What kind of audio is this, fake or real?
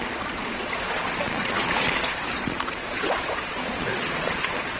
fake